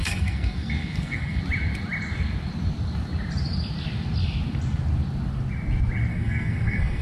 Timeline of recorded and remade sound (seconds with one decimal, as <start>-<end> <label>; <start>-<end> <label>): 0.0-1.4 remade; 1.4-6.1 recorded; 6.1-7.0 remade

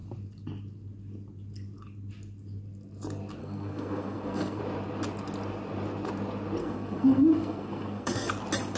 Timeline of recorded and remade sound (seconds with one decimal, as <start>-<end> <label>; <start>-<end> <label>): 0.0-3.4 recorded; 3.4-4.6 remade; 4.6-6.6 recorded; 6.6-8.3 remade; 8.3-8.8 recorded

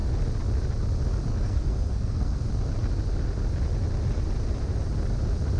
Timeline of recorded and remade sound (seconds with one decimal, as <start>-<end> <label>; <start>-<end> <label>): 0.0-1.3 recorded; 1.3-2.4 remade; 2.4-5.6 recorded

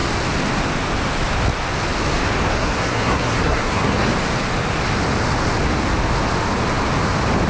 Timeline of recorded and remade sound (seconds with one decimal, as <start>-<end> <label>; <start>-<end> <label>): 0.0-2.5 recorded; 2.5-4.1 remade; 4.1-7.5 recorded

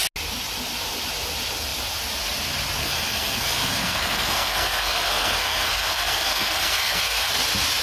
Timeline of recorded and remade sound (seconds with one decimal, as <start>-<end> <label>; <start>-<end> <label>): 0.0-2.8 recorded; 2.8-7.3 remade; 7.3-7.8 recorded

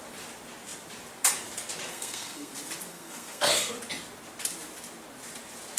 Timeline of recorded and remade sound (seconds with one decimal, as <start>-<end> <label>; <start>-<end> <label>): 0.0-1.9 recorded; 1.9-2.5 remade; 2.5-2.9 recorded; 2.9-3.7 remade; 3.7-5.8 recorded

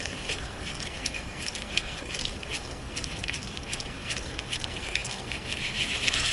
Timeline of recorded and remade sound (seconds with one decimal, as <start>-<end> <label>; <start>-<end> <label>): 0.0-6.3 remade